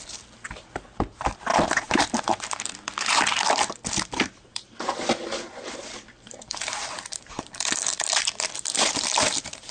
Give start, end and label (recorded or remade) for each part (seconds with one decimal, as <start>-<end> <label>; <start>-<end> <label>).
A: 0.0-9.7 remade